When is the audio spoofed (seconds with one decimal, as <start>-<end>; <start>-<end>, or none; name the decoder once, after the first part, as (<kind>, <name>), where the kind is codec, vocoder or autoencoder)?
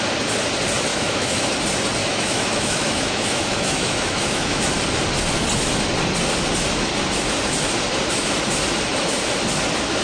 0.9-1.5 (autoencoder, DAC-VAE); 2.0-4.7